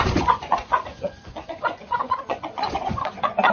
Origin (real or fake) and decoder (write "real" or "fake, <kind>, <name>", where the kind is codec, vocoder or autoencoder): fake, vocoder, Vocos